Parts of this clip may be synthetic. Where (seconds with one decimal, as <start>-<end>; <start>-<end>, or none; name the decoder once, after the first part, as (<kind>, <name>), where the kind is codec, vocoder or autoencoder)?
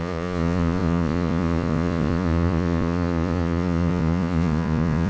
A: 0.0-5.1 (vocoder, Vocos)